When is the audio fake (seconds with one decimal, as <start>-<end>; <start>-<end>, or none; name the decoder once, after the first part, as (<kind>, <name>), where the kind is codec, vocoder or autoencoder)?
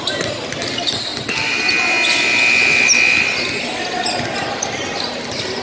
none